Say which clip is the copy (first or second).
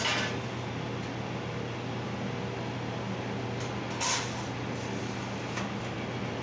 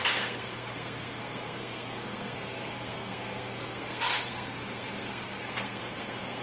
second